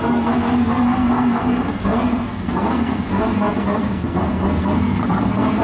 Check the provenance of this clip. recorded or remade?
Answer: remade